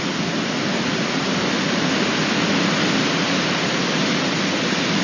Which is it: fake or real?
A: real